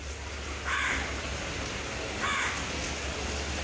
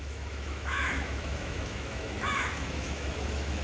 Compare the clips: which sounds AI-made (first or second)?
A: second